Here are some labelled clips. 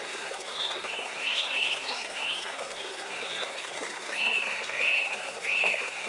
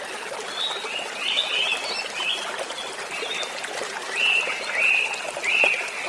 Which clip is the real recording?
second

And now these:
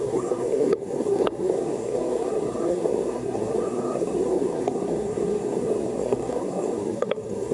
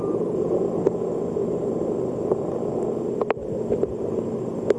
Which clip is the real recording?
second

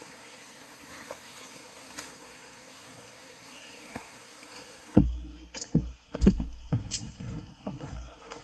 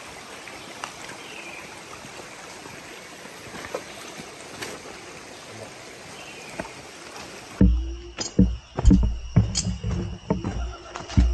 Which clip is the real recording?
second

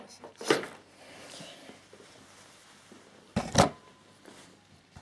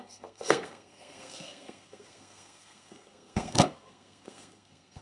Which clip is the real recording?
first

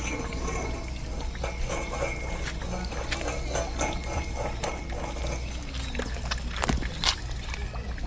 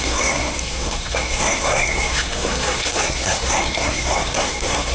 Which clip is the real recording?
first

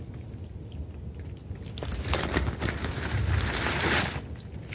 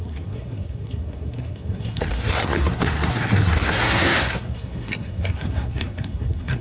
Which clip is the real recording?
first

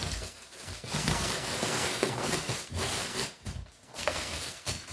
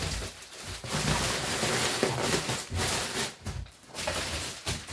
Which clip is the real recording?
second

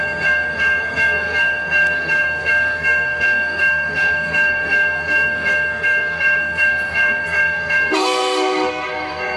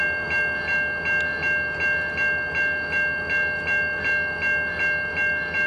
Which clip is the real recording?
second